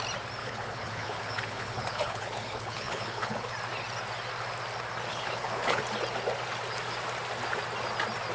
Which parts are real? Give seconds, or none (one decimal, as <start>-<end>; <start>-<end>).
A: 0.0-0.4; 3.5-5.1; 5.8-8.3